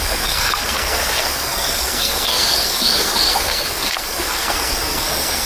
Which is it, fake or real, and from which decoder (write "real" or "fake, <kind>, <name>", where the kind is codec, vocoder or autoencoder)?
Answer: fake, codec, SNAC